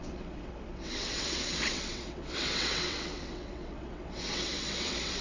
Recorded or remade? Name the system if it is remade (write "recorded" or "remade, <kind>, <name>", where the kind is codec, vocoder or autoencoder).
remade, vocoder, WaveNeXt